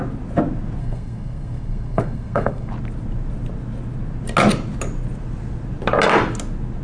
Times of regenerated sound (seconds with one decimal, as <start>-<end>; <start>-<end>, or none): 0.8-2.7